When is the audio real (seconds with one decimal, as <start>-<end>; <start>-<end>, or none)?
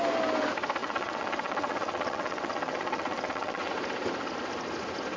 0.0-0.8; 3.7-5.2